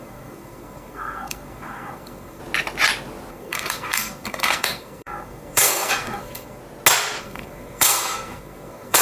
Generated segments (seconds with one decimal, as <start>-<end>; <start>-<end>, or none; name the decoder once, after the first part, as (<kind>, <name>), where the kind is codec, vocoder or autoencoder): 0.0-2.4 (codec, SNAC); 3.3-6.6; 7.2-9.0